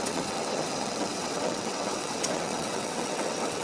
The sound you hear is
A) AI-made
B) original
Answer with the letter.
A